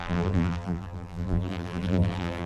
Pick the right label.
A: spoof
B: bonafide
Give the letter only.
A